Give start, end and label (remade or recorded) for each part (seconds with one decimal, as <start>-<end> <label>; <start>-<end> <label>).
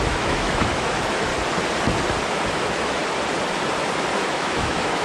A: 0.0-1.3 remade; 1.3-2.6 recorded; 2.6-3.0 remade; 3.0-4.3 recorded; 4.3-5.0 remade